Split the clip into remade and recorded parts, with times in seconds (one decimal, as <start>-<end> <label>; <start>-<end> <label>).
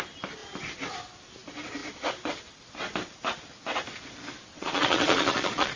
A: 0.0-4.5 recorded; 4.5-5.8 remade